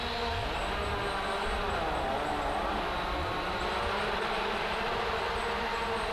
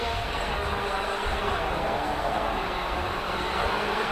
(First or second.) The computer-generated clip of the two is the second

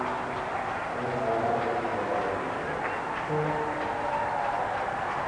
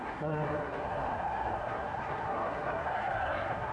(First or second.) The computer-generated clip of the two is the second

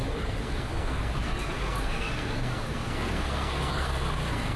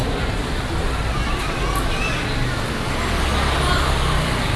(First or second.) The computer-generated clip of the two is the first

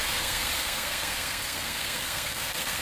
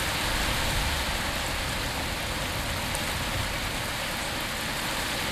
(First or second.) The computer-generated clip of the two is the first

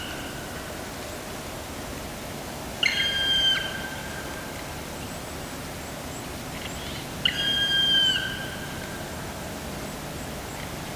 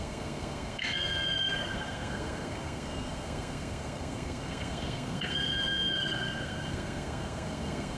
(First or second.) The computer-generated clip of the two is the second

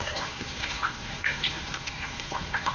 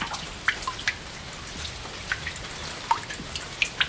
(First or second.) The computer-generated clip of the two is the first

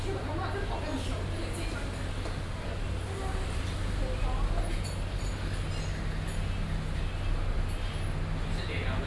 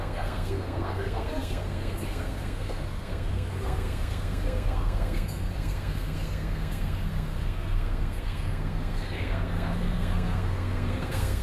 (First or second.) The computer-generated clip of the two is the second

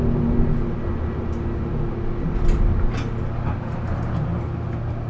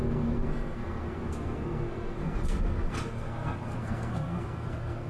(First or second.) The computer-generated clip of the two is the second